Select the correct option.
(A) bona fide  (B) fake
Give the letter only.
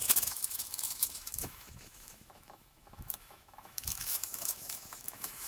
B